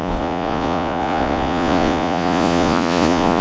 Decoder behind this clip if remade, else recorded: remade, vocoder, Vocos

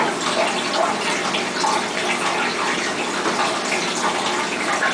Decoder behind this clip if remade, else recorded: recorded